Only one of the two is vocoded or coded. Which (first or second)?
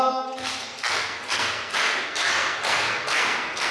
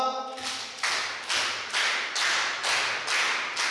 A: first